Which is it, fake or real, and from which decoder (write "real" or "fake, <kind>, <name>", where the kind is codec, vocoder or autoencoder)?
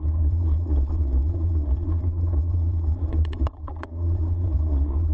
fake, vocoder, Vocos